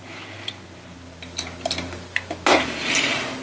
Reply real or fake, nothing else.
real